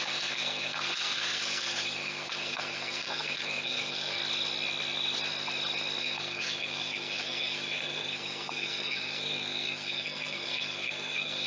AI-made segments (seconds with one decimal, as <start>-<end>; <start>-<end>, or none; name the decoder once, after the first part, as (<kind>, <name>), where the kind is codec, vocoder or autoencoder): 0.0-4.2 (codec, SNAC); 6.0-11.5